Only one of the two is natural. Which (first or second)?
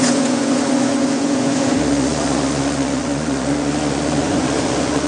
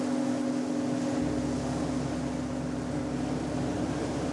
second